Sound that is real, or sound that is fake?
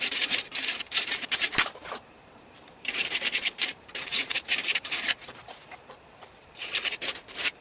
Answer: fake